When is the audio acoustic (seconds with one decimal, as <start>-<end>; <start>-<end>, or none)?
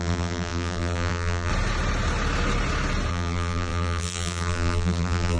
1.5-3.1